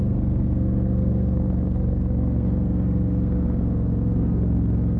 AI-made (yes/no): yes